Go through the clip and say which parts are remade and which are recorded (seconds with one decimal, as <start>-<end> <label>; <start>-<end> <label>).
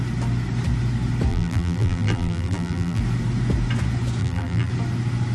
0.0-1.3 recorded; 1.3-3.0 remade; 3.0-4.2 recorded; 4.2-4.7 remade; 4.7-5.3 recorded